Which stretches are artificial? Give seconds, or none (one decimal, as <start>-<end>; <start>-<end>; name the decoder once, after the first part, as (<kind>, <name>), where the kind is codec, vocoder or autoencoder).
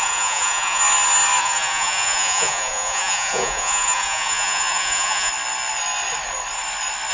0.0-0.8 (vocoder, Vocos); 1.4-5.3